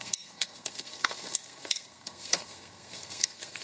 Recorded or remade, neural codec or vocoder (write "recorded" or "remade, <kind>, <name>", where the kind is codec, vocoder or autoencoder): remade, codec, SNAC